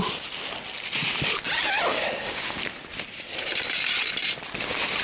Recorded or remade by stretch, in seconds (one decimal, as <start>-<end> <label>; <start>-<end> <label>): 0.0-1.9 recorded; 1.9-2.6 remade; 2.6-5.0 recorded